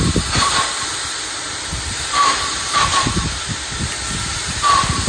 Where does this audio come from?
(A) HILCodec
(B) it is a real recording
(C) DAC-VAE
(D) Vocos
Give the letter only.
B